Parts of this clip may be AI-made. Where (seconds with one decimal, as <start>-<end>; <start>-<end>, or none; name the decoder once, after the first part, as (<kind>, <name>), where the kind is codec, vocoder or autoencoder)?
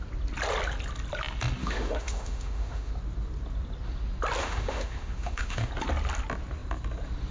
1.6-2.9 (autoencoder, DAC-VAE); 4.4-5.7